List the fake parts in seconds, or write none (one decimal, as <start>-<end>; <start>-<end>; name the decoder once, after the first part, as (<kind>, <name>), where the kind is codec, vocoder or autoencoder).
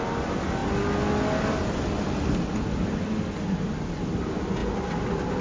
none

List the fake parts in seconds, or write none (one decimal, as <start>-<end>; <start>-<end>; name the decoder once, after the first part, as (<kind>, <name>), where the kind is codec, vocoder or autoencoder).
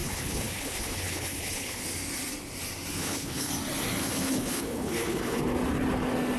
0.0-1.8 (codec, HILCodec); 2.9-3.5; 4.0-5.4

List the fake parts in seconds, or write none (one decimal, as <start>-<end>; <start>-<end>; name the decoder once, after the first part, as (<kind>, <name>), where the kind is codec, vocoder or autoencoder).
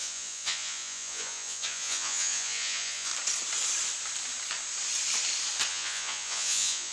0.0-3.1 (vocoder, Vocos); 5.7-6.9